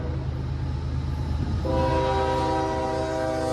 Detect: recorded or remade recorded